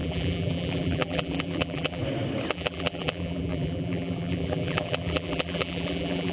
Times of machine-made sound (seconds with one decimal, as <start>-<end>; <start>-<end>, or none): 0.0-2.0; 2.5-6.3